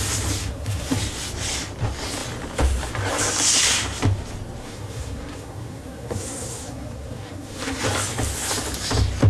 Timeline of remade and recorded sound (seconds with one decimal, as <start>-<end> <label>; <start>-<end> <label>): 0.0-0.4 recorded; 0.4-1.0 remade; 1.0-4.6 recorded; 4.6-7.8 remade; 7.8-9.3 recorded